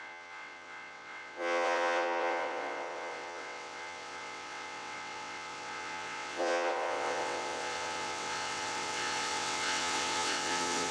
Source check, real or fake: fake